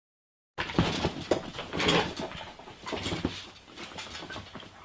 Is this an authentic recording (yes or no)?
yes